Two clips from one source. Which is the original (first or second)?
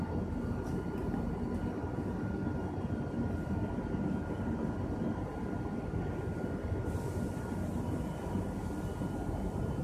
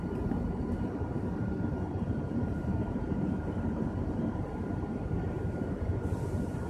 first